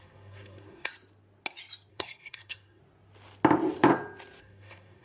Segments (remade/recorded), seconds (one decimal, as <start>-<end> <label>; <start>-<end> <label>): 0.0-0.9 remade; 0.9-1.9 recorded; 1.9-2.8 remade; 2.8-4.4 recorded; 4.4-5.0 remade